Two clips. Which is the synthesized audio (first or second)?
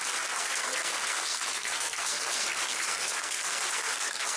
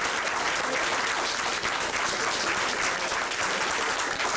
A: first